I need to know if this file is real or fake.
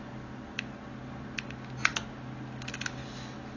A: real